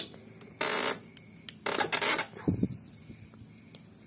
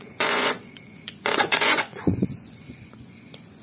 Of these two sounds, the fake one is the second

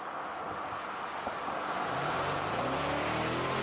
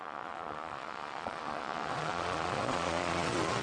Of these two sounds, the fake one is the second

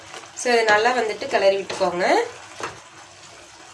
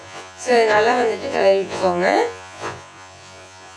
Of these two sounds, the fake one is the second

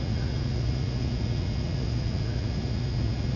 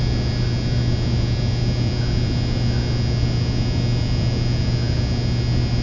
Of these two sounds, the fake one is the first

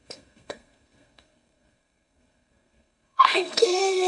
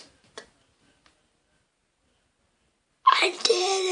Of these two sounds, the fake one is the first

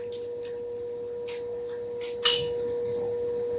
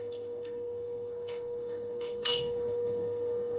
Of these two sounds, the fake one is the second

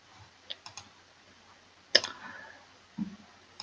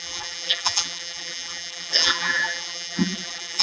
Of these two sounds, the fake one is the second